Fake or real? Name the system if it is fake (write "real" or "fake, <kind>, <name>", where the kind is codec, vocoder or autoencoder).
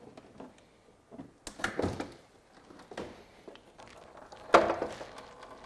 real